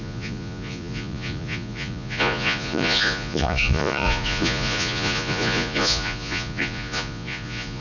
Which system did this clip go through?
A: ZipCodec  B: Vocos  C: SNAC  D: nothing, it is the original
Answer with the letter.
B